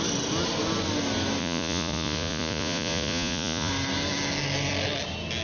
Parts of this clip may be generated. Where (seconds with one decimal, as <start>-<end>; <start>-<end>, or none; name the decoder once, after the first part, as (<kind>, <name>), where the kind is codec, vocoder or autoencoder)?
1.4-3.7 (vocoder, Vocos)